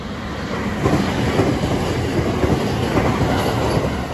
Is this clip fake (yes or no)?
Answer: no